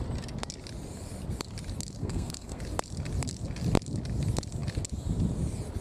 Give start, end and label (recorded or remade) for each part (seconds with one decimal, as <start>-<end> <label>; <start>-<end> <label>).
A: 0.0-2.0 recorded; 2.0-2.6 remade; 2.6-5.8 recorded